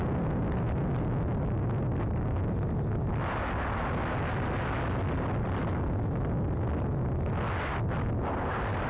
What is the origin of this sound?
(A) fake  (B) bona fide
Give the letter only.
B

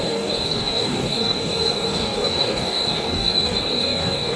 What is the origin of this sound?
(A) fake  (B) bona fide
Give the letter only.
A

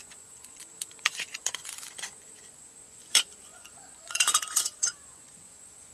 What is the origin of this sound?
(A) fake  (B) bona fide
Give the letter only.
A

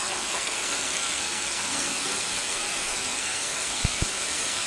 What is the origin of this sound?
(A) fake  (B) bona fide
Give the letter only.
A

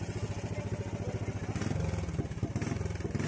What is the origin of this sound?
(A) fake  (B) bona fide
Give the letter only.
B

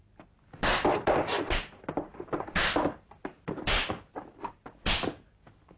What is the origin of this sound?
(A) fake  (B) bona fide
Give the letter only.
A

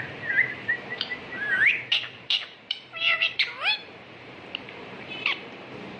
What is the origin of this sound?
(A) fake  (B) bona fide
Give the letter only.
A